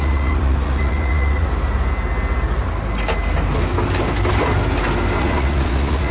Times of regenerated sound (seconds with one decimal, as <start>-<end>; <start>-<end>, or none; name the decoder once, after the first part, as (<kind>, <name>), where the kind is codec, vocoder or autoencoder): 0.0-1.5 (vocoder, Vocos); 5.2-6.1